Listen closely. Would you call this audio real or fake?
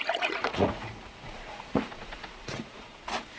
fake